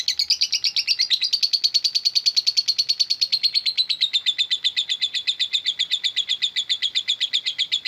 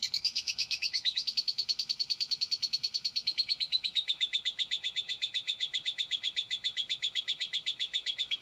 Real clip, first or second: first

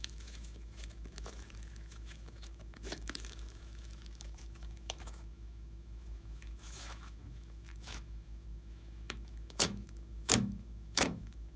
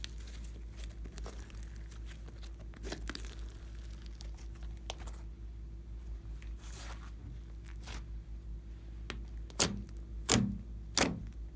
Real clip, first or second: second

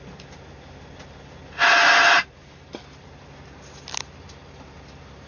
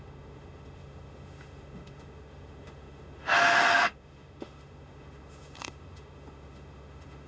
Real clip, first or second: first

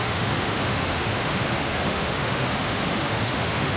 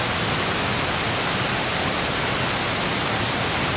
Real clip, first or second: second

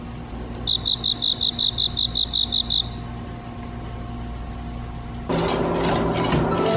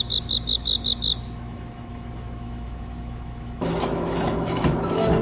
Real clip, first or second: first